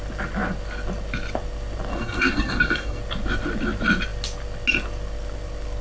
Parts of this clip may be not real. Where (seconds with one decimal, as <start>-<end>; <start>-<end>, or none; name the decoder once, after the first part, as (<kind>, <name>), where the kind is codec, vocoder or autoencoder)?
1.9-3.0 (codec, SNAC)